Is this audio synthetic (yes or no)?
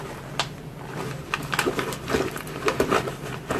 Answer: no